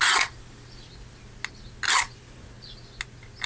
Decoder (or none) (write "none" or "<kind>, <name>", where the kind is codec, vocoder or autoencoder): none